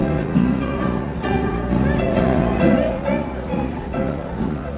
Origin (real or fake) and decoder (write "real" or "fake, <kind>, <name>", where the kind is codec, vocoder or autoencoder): fake, vocoder, Vocos